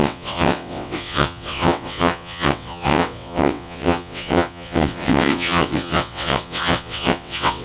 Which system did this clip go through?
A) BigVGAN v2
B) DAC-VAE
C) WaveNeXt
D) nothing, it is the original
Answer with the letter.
C